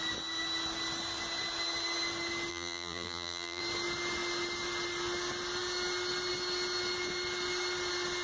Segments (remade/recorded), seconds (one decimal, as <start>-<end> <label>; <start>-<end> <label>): 0.0-2.5 recorded; 2.5-3.6 remade; 3.6-8.2 recorded